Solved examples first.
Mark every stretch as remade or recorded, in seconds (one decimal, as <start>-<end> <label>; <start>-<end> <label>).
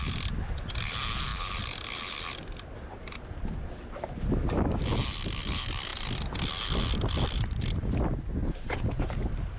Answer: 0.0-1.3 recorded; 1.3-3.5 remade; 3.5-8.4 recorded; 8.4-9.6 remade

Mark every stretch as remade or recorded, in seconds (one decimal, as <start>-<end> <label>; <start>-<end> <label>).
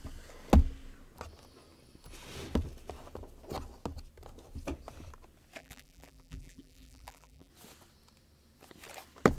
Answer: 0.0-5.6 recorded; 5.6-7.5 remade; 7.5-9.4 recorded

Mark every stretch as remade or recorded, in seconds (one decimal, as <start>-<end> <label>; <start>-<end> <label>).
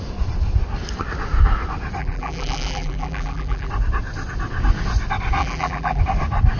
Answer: 0.0-2.0 recorded; 2.0-3.7 remade; 3.7-5.4 recorded; 5.4-6.0 remade; 6.0-6.6 recorded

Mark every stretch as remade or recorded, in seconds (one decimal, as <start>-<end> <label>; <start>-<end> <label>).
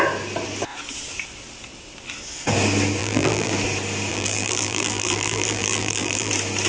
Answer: 0.0-3.0 recorded; 3.0-3.5 remade; 3.5-4.1 recorded; 4.1-6.3 remade; 6.3-6.7 recorded